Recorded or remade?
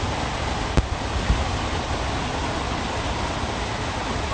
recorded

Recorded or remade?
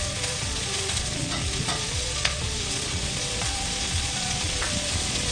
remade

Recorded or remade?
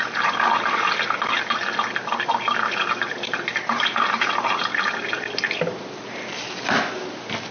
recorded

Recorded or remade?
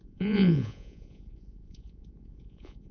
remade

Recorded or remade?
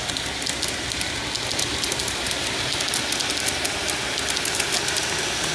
recorded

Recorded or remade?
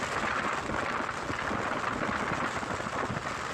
recorded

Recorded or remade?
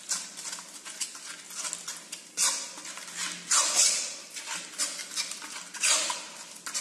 recorded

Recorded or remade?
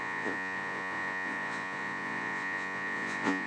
remade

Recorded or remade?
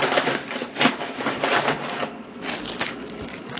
recorded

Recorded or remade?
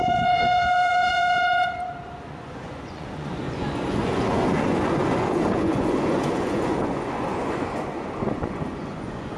remade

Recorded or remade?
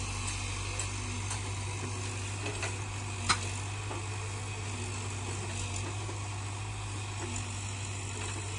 recorded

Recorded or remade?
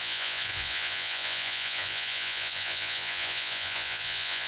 remade